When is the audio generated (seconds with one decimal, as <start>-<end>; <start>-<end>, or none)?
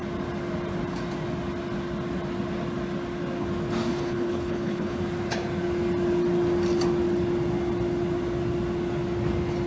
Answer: 3.9-5.0